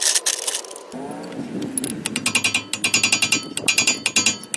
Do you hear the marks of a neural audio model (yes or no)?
no